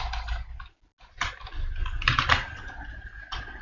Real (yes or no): yes